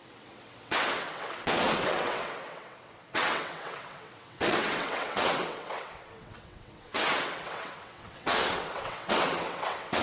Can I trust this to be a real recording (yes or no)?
no